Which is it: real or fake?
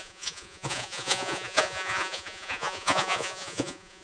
fake